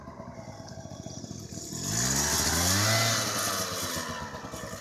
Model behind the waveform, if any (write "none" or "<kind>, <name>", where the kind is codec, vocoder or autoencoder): none